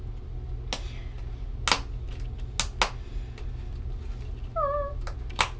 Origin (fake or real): real